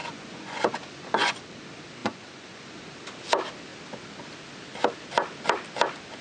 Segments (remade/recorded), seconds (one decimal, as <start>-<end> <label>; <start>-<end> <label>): 0.0-1.4 remade; 1.4-2.0 recorded; 2.0-2.8 remade; 2.8-6.2 recorded